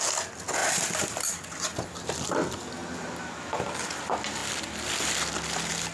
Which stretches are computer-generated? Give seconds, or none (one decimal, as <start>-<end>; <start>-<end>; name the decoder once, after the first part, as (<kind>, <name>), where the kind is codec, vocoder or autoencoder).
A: 0.6-2.3 (vocoder, BigVGAN v2); 2.8-4.0; 4.4-5.3